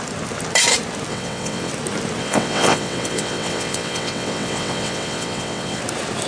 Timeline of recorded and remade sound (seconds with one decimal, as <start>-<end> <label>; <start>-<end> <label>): 0.0-1.1 recorded; 1.1-1.7 remade; 1.7-2.2 recorded; 2.2-5.8 remade; 5.8-6.3 recorded